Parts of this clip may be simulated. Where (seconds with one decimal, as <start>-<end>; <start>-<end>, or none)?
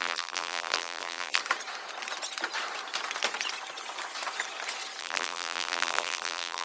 0.0-1.4; 5.0-6.6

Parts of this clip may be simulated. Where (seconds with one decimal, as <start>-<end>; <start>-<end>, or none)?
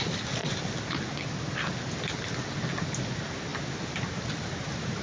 none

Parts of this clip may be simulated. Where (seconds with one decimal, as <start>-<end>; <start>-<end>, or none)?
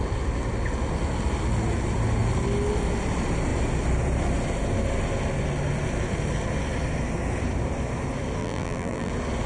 8.4-9.1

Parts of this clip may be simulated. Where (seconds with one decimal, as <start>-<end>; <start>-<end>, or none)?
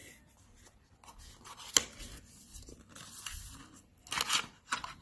2.2-3.4; 4.6-5.0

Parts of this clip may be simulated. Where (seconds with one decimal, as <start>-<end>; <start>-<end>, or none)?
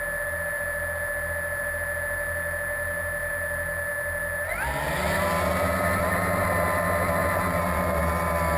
7.2-8.0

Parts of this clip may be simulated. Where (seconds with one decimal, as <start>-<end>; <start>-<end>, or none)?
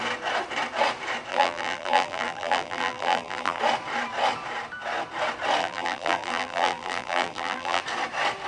1.3-3.6; 5.6-7.8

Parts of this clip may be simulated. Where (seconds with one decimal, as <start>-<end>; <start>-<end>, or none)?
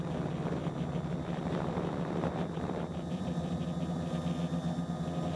0.6-3.8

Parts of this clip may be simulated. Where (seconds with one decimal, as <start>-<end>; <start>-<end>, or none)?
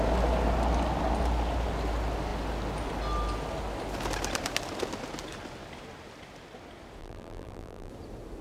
7.0-7.9